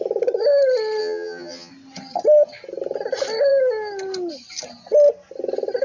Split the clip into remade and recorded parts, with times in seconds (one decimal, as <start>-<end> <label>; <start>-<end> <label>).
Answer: 0.0-1.0 recorded; 1.0-1.7 remade; 1.7-5.8 recorded